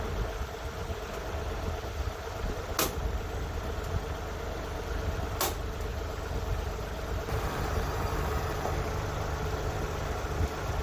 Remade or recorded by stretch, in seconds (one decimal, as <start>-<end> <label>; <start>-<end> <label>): 0.0-5.9 recorded; 5.9-8.7 remade; 8.7-10.8 recorded